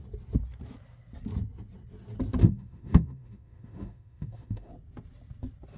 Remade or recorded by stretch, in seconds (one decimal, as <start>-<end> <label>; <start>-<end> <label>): 0.0-2.4 recorded; 2.4-4.7 remade; 4.7-5.8 recorded